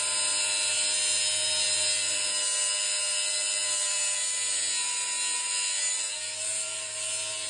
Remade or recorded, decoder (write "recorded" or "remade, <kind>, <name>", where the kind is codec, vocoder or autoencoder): recorded